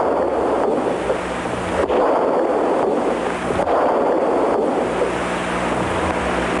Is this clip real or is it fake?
real